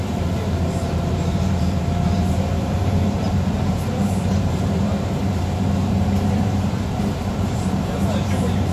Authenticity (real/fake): fake